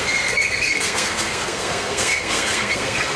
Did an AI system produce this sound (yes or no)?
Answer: yes